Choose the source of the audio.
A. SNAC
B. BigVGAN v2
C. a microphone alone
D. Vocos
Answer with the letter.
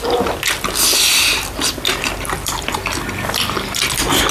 B